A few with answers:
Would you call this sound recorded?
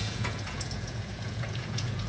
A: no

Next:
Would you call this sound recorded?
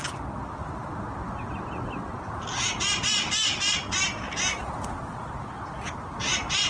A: yes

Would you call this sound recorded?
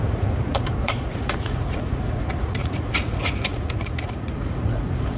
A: no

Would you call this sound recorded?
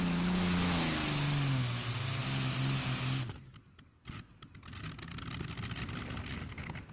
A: yes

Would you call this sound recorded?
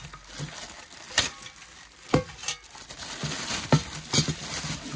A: yes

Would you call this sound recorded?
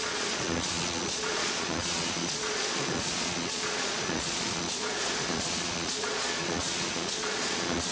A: no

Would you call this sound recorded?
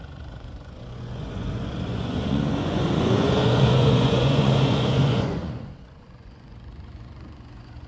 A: no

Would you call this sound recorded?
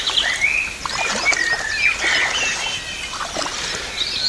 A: yes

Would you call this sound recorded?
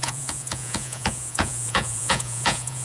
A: no